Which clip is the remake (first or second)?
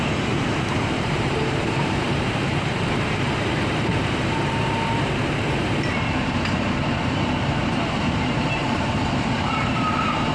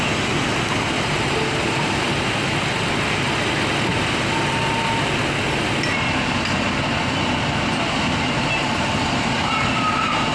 first